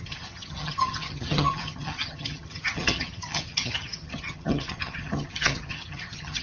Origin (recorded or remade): remade